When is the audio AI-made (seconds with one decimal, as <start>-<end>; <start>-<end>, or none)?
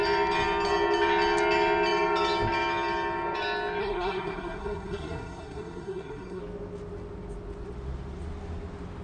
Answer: 3.8-6.4